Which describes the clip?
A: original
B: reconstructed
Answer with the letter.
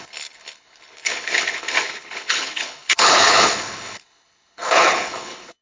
B